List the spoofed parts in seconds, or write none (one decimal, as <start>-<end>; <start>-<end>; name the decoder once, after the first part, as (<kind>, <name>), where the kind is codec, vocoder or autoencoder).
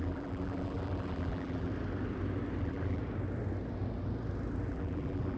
0.0-1.7 (vocoder, BigVGAN v2); 2.6-3.0; 4.7-5.4